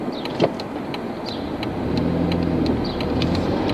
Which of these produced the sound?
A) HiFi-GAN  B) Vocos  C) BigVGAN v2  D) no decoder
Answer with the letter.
D